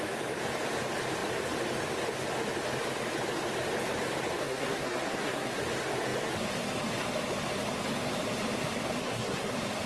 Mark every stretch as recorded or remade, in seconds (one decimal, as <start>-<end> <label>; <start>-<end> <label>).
0.0-4.4 recorded; 4.4-5.6 remade; 5.6-9.0 recorded; 9.0-9.5 remade; 9.5-9.9 recorded